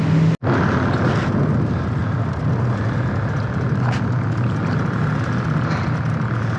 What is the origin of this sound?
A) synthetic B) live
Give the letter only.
B